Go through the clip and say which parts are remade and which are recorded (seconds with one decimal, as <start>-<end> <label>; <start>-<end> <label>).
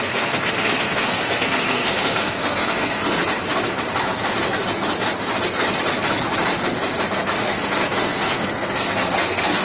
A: 0.0-3.2 remade; 3.2-7.4 recorded; 7.4-9.6 remade